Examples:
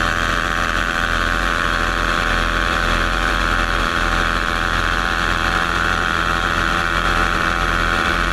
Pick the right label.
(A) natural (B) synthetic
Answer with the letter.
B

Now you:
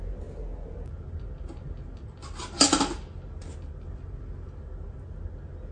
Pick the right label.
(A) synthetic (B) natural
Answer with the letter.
B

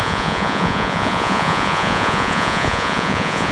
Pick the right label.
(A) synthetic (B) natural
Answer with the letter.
A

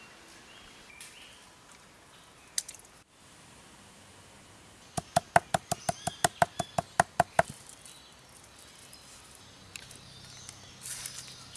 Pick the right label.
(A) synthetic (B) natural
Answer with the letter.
B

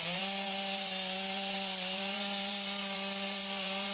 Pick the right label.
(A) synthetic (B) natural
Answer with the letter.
A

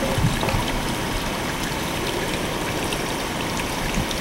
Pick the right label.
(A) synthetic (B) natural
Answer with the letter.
A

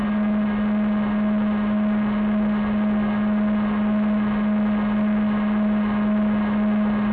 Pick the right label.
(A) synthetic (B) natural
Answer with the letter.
B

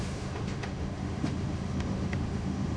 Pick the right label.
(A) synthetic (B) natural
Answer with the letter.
A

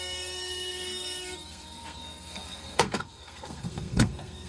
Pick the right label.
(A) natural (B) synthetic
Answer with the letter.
B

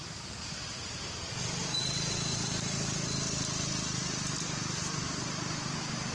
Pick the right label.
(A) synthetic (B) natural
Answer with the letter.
A